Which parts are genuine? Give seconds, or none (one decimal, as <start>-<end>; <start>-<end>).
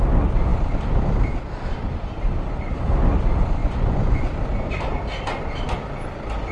0.0-3.6; 4.2-6.5